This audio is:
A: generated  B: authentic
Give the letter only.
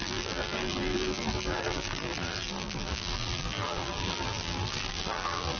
A